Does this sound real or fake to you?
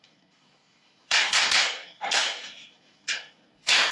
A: fake